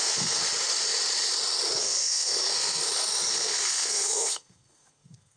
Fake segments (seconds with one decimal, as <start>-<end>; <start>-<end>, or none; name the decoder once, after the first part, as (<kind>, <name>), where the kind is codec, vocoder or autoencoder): 0.0-0.4 (codec, SNAC); 1.8-2.8; 3.3-5.4

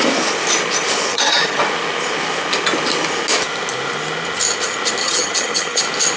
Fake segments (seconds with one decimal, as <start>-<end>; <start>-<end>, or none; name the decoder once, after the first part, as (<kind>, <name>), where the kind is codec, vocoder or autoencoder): 1.1-1.6 (vocoder, HiFi-GAN); 5.0-5.8

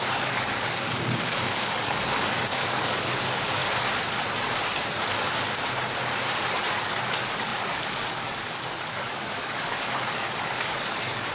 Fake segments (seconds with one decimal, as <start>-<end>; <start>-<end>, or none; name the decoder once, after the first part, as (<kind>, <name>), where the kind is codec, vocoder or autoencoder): 0.0-3.6 (codec, DAC); 6.7-11.3